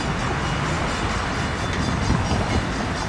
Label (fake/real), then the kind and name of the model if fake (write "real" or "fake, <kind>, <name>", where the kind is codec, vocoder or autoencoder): real